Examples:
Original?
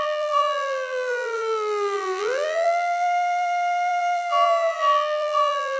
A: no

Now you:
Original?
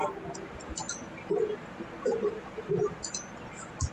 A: yes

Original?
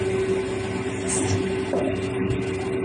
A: yes